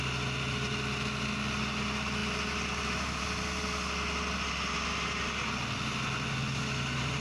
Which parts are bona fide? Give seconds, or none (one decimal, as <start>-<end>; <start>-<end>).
0.0-7.2